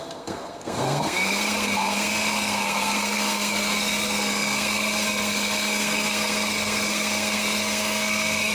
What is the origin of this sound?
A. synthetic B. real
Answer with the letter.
A